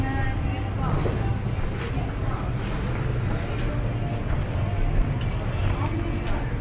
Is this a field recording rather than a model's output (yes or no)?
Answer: yes